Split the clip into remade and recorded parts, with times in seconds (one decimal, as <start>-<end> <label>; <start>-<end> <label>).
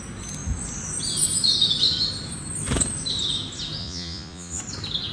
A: 0.0-3.8 recorded; 3.8-4.6 remade; 4.6-5.1 recorded